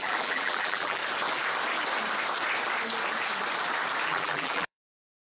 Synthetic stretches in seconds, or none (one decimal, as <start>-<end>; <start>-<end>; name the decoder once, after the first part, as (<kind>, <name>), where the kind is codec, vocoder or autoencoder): 0.0-1.0 (vocoder, BigVGAN v2); 4.1-5.2